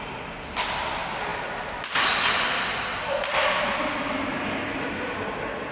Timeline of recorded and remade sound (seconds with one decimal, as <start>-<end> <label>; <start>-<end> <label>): 0.0-5.7 recorded